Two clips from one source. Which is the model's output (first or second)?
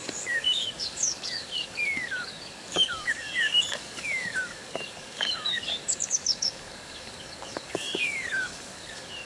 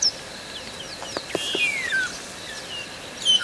first